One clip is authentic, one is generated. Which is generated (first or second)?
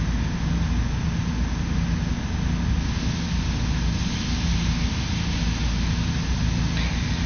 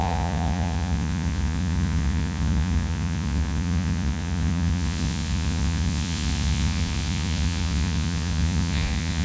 second